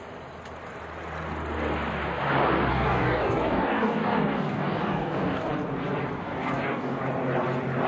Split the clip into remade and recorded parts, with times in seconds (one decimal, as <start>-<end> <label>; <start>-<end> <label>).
0.0-2.7 recorded; 2.7-5.5 remade; 5.5-6.2 recorded; 6.2-7.0 remade; 7.0-7.9 recorded